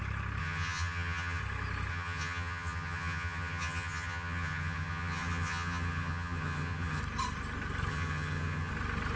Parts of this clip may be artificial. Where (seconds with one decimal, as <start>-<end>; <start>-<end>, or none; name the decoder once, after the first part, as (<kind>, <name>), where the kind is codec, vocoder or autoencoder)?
0.4-1.4 (vocoder, HiFi-GAN); 1.9-7.0; 7.9-8.7